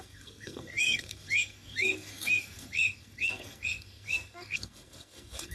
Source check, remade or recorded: remade